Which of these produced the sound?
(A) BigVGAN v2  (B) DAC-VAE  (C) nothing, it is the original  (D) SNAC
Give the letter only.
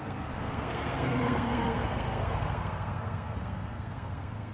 D